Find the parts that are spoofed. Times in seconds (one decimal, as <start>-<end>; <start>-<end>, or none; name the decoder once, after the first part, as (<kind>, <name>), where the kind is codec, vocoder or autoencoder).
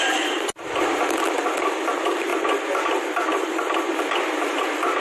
none